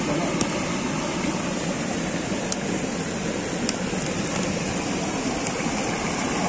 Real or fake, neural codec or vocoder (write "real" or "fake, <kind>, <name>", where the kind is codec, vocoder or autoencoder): real